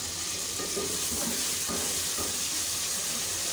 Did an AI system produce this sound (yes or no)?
no